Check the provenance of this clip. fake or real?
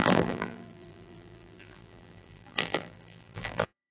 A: fake